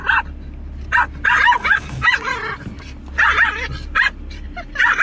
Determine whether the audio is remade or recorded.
recorded